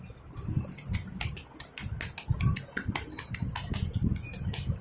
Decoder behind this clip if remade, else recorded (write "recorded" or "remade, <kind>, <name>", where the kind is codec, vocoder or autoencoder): recorded